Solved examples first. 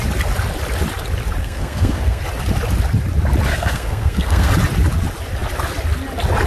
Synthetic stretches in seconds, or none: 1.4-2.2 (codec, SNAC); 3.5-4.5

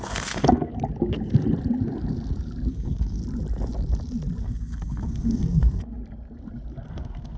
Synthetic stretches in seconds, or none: 0.0-0.7 (codec, SNAC); 2.7-3.2; 4.4-6.0; 6.9-7.4

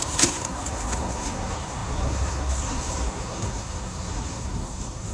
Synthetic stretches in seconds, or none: 0.0-5.1 (codec, SNAC)

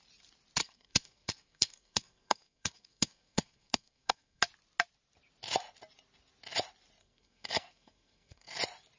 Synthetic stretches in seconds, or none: 0.6-4.4 (codec, SNAC); 7.0-8.5

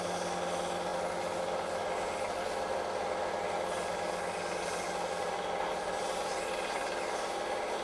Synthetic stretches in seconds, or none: none

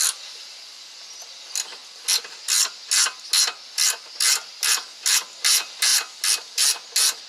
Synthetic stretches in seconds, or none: none